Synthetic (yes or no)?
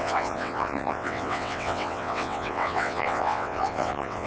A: yes